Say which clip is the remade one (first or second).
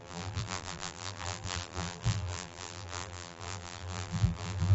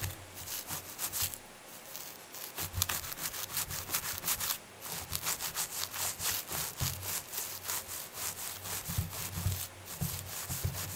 first